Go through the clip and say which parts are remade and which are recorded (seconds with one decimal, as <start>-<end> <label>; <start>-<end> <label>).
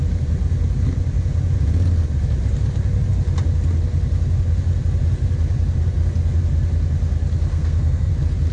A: 0.0-7.5 recorded; 7.5-8.1 remade; 8.1-8.5 recorded